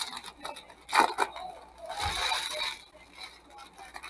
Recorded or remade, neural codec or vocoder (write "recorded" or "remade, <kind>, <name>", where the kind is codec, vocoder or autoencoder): recorded